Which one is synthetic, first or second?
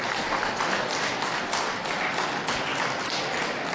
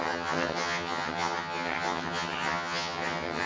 second